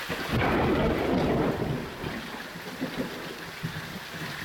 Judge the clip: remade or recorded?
recorded